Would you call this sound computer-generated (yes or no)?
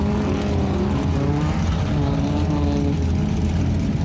no